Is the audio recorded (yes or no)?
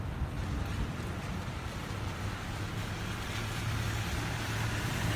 yes